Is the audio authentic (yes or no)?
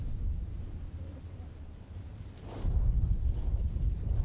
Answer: no